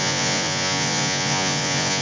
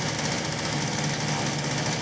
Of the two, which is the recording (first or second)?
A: second